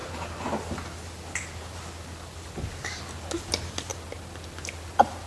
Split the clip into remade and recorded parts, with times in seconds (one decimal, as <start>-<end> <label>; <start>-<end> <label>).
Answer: 0.0-5.3 recorded

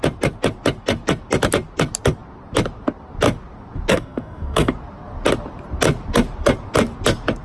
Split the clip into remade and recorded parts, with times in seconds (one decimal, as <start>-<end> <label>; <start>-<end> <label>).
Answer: 0.0-3.9 recorded; 3.9-4.7 remade; 4.7-7.4 recorded

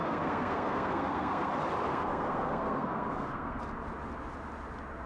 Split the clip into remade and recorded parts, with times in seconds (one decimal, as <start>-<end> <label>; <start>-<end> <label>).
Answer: 0.0-1.5 remade; 1.5-1.9 recorded; 1.9-3.6 remade; 3.6-5.1 recorded